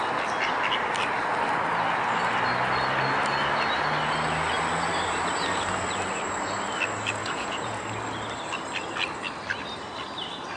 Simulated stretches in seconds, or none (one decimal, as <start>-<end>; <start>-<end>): 7.2-7.8